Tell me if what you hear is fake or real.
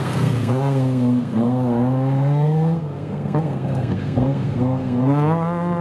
fake